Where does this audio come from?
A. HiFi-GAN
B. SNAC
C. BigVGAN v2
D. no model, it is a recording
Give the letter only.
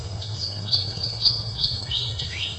B